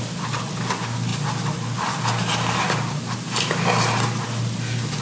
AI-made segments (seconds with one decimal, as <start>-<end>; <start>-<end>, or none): 1.1-4.1